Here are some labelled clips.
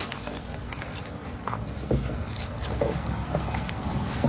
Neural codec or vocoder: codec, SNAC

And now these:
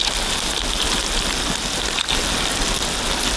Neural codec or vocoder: none